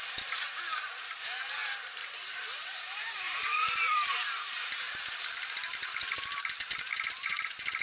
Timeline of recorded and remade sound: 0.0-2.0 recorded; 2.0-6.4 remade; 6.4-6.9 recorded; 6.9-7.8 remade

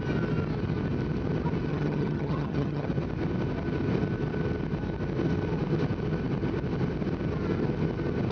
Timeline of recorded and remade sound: 0.0-1.7 recorded; 1.7-2.9 remade; 2.9-8.3 recorded

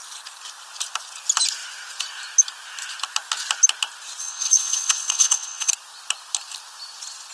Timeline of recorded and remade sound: 0.0-4.2 recorded; 4.2-5.7 remade; 5.7-7.3 recorded

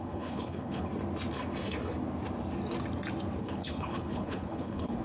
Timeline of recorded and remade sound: 0.0-0.9 remade; 0.9-3.4 recorded; 3.4-5.0 remade